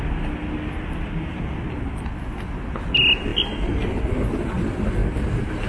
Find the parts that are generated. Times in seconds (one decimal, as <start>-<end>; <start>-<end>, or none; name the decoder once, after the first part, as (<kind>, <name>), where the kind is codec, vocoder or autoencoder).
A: none